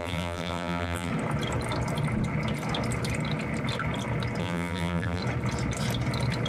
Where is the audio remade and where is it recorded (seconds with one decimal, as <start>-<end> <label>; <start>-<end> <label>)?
0.0-1.1 remade; 1.1-4.4 recorded; 4.4-5.2 remade; 5.2-6.5 recorded